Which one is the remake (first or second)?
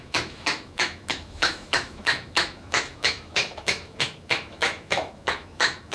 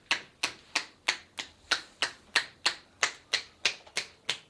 first